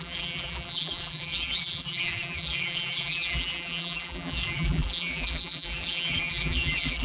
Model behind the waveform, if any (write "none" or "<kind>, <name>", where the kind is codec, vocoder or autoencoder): vocoder, BigVGAN v2